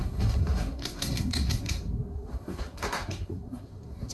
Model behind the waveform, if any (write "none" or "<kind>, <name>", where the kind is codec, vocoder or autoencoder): codec, SNAC